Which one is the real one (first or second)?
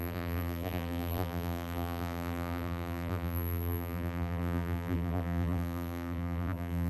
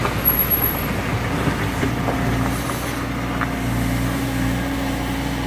second